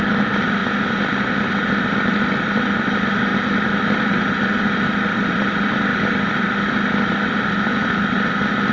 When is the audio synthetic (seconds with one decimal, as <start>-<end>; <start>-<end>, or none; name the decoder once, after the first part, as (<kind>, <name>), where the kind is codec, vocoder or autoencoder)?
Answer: none